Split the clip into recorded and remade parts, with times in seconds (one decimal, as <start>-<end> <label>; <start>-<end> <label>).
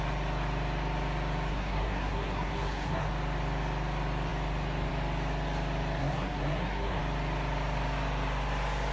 0.0-1.5 recorded; 1.5-3.1 remade; 3.1-6.0 recorded; 6.0-7.0 remade; 7.0-8.9 recorded